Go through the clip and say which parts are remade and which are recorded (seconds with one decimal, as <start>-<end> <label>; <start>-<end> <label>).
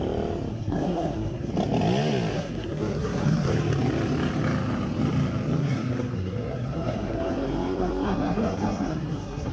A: 0.0-0.5 recorded; 0.5-1.5 remade; 1.5-2.3 recorded; 2.3-3.5 remade; 3.5-5.6 recorded; 5.6-9.5 remade